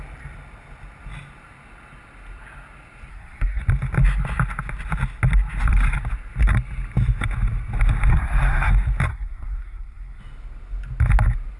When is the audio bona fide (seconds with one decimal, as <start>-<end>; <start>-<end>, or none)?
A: 0.0-3.1; 3.6-8.1; 8.7-9.1; 10.2-11.6

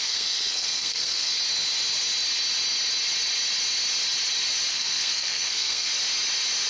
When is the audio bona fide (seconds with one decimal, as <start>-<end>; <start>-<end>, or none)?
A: 1.3-4.7; 5.9-6.7

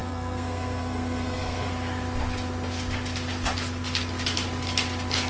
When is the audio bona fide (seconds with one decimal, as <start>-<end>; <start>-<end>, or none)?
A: 1.7-5.3